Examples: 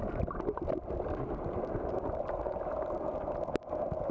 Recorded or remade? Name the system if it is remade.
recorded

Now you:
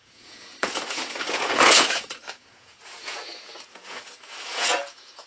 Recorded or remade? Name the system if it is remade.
remade, vocoder, Vocos